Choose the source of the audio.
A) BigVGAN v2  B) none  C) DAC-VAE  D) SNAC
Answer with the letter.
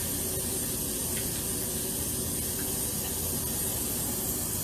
B